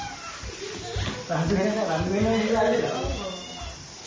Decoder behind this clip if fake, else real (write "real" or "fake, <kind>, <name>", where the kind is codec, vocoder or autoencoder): real